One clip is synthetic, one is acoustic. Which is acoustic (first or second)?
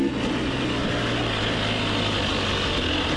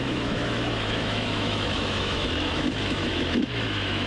first